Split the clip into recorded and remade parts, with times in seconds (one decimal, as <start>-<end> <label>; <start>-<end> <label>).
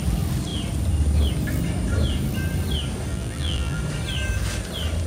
0.0-3.1 recorded; 3.1-3.8 remade; 3.8-5.1 recorded